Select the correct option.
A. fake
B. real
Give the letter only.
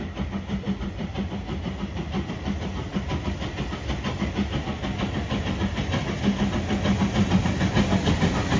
B